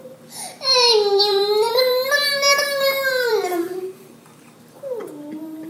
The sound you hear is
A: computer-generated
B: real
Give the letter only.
A